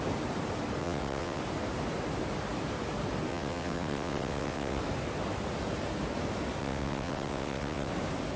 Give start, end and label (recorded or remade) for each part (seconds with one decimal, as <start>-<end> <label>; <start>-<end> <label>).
0.0-0.8 recorded; 0.8-1.4 remade; 1.4-3.3 recorded; 3.3-4.8 remade; 4.8-6.6 recorded; 6.6-7.9 remade; 7.9-8.4 recorded